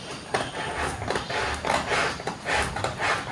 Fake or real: real